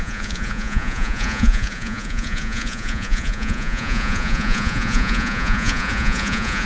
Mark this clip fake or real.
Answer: fake